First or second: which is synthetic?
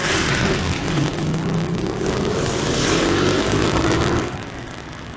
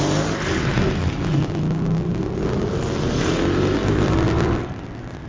first